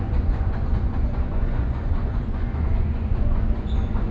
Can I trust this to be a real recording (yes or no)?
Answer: no